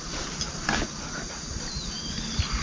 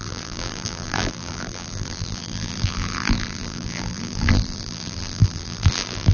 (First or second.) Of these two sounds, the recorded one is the first